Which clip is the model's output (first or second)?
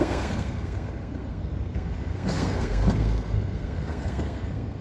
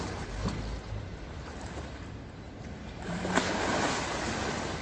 first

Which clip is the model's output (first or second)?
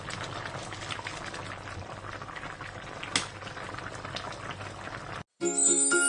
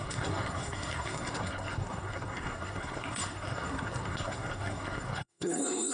second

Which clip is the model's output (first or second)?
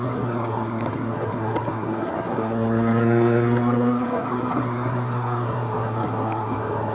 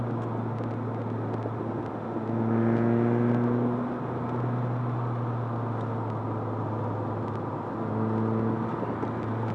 first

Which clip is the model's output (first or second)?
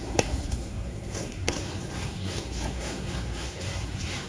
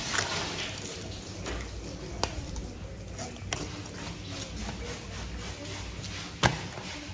first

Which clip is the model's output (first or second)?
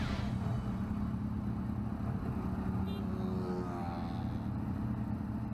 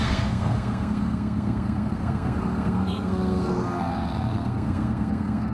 second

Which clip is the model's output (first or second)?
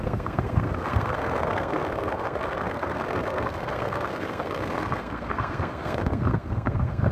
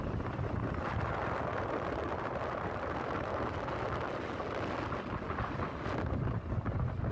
first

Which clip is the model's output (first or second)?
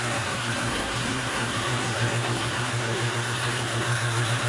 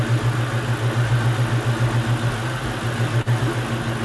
first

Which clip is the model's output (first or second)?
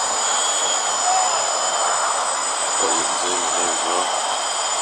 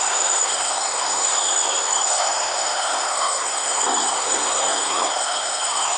second